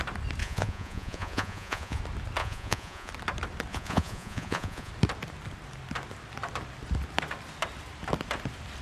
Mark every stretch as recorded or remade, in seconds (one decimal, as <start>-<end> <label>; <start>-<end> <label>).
0.0-0.4 recorded; 0.4-2.0 remade; 2.0-2.4 recorded; 2.4-3.1 remade; 3.1-3.7 recorded; 3.7-4.9 remade; 4.9-8.8 recorded